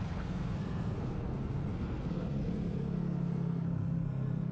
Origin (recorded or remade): remade